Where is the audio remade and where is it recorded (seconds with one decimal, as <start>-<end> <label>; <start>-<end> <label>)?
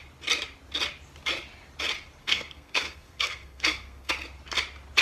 0.0-2.2 recorded; 2.2-4.1 remade; 4.1-5.0 recorded